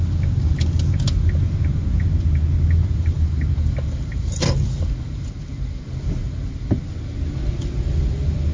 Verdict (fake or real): real